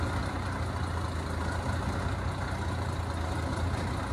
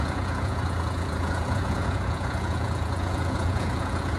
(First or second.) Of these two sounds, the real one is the first